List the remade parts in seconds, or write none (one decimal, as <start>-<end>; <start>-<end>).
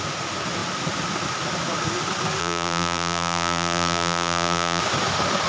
2.4-4.8